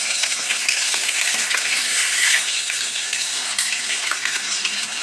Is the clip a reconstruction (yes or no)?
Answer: yes